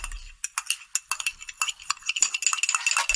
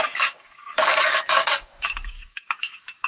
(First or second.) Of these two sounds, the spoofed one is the second